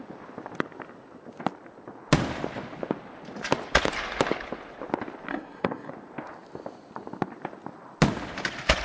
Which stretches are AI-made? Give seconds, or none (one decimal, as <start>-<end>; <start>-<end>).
5.3-5.9